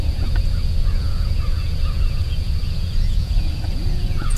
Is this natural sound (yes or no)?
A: no